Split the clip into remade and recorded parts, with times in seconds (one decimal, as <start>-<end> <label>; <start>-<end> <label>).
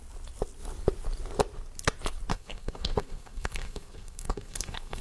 0.0-2.3 recorded; 2.3-5.0 remade